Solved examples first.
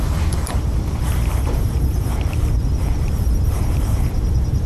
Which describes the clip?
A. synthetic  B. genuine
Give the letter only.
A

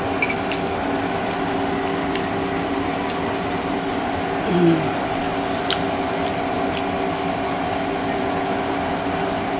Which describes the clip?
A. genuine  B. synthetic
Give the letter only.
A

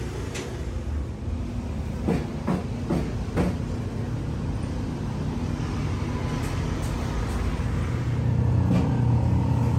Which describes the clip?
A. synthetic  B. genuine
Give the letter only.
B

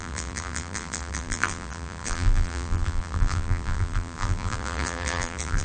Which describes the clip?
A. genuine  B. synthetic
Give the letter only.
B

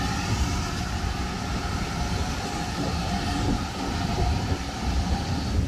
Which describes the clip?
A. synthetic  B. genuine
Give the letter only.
B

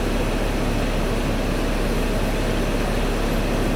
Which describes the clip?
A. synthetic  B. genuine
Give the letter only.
B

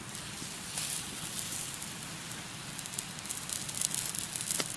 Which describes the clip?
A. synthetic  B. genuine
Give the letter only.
B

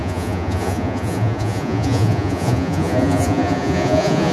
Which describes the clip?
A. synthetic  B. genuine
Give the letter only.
A